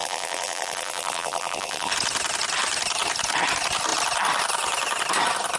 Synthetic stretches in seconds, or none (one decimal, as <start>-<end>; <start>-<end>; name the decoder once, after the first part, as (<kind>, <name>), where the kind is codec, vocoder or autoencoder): 0.0-1.9 (vocoder, BigVGAN v2)